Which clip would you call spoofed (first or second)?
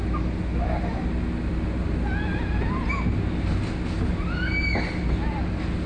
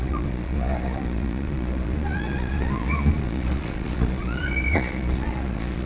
second